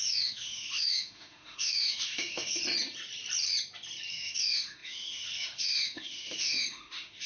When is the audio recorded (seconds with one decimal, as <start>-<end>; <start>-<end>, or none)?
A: 2.6-4.1